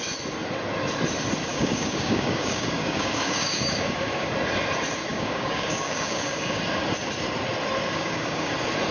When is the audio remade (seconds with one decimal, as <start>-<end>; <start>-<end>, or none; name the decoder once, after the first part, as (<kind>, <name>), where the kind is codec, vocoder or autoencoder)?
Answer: 1.5-4.3 (codec, DAC); 5.1-6.6; 7.8-8.5